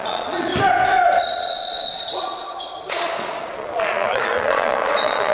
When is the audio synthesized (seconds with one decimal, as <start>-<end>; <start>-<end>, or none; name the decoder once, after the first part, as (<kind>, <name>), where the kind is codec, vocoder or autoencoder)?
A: 0.0-0.5 (vocoder, Vocos); 1.2-5.3